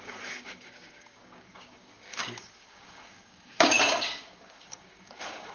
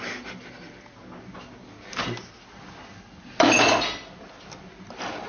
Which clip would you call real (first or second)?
second